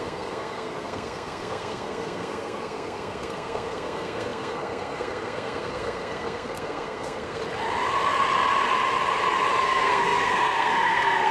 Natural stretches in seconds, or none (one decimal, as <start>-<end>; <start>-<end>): 7.4-9.6